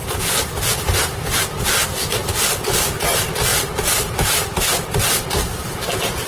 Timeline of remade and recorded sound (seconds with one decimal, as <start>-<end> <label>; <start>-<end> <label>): 0.0-3.5 recorded; 3.5-4.6 remade; 4.6-6.3 recorded